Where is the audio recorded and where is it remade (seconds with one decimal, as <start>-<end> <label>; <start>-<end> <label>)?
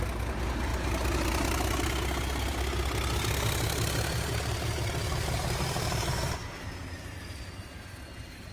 0.0-5.0 recorded; 5.0-7.5 remade; 7.5-8.5 recorded